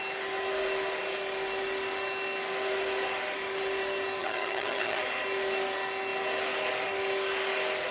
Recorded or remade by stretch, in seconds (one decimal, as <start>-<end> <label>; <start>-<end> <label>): 0.0-4.2 recorded; 4.2-5.0 remade; 5.0-7.9 recorded